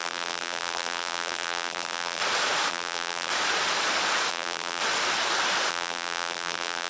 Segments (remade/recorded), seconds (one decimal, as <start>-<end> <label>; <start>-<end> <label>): 0.0-2.2 remade; 2.2-2.7 recorded; 2.7-3.3 remade; 3.3-4.3 recorded; 4.3-4.8 remade; 4.8-5.7 recorded; 5.7-6.9 remade